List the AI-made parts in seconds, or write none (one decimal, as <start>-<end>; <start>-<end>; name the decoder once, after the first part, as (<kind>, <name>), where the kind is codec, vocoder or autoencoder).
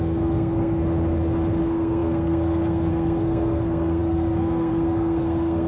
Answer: 0.0-0.8 (codec, SNAC); 1.6-5.7